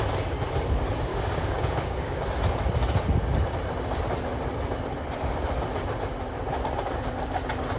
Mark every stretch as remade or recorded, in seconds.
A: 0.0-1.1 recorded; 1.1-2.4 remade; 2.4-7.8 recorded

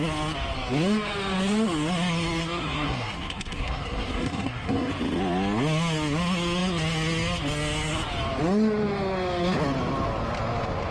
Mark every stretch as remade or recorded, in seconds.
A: 0.0-2.4 recorded; 2.4-4.9 remade; 4.9-10.9 recorded

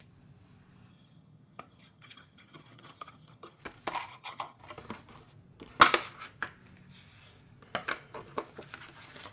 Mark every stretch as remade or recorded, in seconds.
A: 0.0-0.9 recorded; 0.9-3.6 remade; 3.6-4.1 recorded; 4.1-4.6 remade; 4.6-9.3 recorded